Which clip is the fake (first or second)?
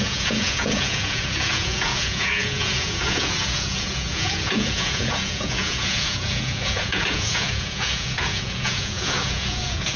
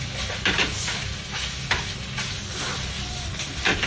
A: first